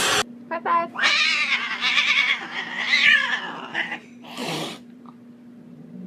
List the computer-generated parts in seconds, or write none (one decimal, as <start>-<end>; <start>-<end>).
1.9-3.3; 4.4-5.0